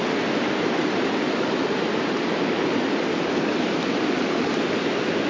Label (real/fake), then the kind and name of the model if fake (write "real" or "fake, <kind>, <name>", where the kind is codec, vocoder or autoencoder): real